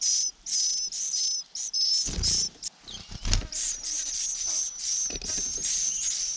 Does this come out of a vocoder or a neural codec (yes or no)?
no